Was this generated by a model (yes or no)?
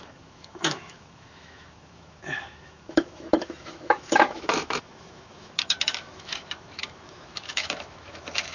yes